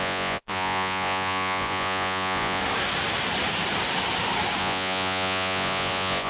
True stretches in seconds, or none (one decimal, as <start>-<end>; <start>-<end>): 2.6-4.6